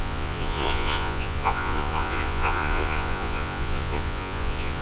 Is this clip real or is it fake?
fake